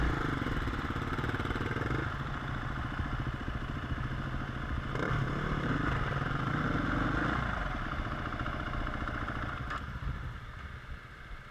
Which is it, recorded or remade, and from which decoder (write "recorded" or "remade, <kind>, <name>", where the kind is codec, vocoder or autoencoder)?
recorded